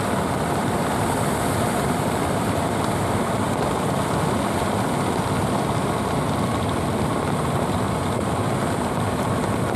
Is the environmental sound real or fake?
real